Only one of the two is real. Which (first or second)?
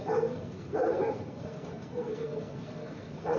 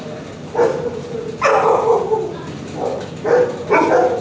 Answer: second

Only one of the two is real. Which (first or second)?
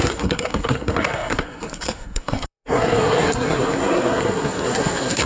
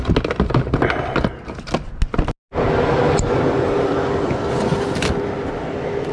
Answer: second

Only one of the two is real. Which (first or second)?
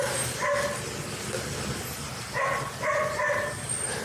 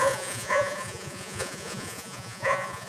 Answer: first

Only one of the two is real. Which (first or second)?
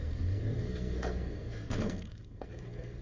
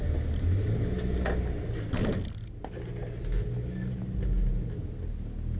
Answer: second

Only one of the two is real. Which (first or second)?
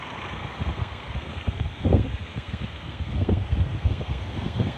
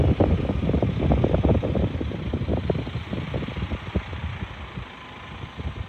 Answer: second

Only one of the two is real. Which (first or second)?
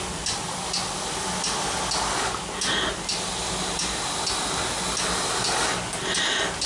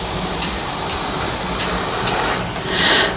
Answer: first